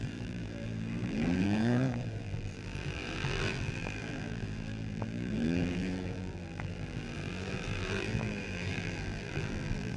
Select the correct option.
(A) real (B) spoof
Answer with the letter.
B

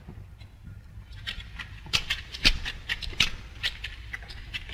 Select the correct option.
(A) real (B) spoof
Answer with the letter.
B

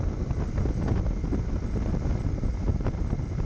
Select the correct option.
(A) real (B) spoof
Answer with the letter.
A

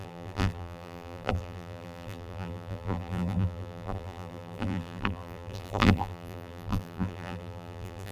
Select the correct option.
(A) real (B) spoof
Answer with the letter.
B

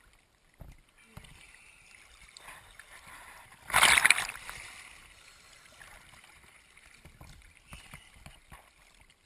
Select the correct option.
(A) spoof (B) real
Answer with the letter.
A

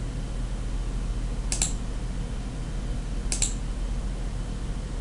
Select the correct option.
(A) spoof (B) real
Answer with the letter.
B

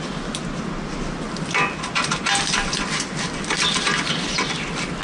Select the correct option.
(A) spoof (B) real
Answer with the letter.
B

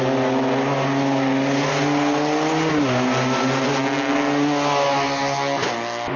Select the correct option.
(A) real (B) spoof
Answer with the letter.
A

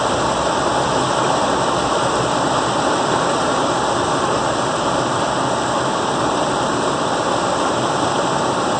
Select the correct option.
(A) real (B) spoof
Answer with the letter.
A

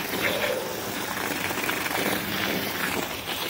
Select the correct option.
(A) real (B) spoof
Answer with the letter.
B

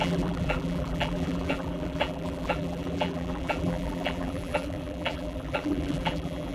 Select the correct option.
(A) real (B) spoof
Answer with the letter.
B